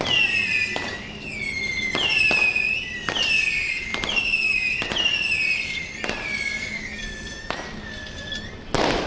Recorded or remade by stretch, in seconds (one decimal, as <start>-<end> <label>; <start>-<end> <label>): 0.0-2.5 recorded; 2.5-7.3 remade; 7.3-9.1 recorded